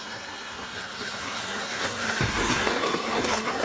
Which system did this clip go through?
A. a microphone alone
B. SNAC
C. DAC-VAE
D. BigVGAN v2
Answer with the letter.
B